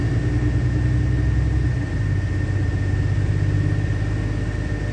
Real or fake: real